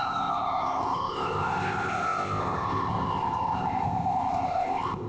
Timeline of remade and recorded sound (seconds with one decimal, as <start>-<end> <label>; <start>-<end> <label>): 0.0-5.1 remade